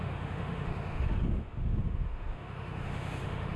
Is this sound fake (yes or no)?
yes